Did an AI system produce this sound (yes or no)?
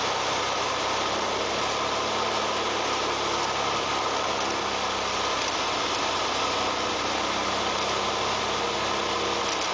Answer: no